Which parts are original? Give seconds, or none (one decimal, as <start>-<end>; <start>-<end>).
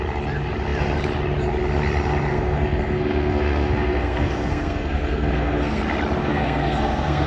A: 0.0-2.3; 5.8-6.2